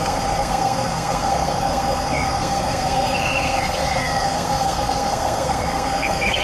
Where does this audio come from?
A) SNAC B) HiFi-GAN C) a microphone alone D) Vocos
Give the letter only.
A